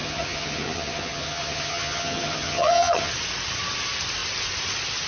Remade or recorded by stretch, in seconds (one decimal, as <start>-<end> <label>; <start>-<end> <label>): 0.0-3.1 remade; 3.1-5.1 recorded